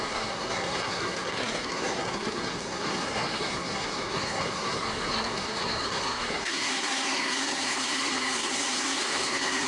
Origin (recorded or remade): remade